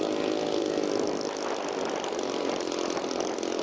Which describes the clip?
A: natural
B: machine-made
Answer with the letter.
A